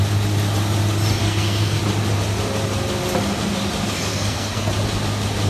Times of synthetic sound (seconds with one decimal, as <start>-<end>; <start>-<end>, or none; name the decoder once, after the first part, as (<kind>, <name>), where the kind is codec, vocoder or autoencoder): 1.2-1.8 (codec, SNAC); 4.1-4.7